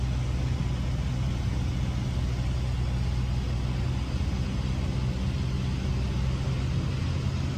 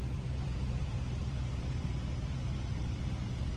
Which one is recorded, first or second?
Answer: first